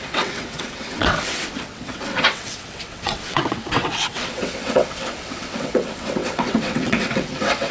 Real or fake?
fake